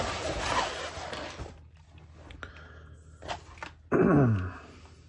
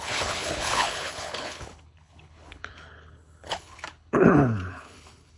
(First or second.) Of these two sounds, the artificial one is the second